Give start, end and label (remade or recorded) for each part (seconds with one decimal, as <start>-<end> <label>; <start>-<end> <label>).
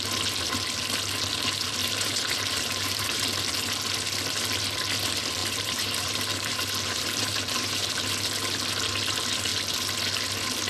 0.0-1.8 recorded; 1.8-3.2 remade; 3.2-5.4 recorded; 5.4-7.9 remade; 7.9-10.7 recorded